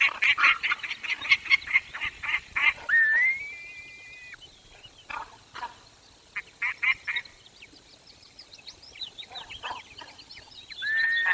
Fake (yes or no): no